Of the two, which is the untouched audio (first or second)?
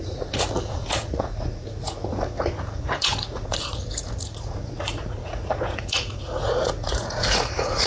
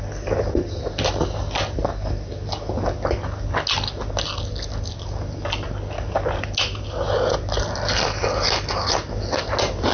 second